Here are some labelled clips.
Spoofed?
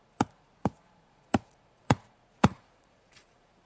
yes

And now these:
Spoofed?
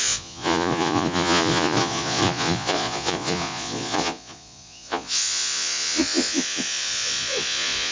yes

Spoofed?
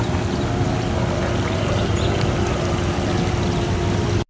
no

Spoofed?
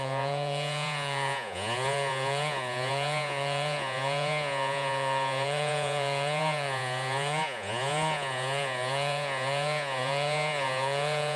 yes